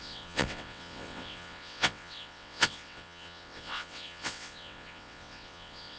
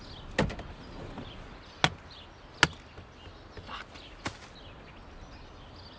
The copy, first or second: first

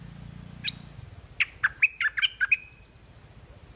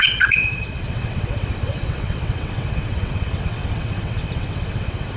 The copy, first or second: second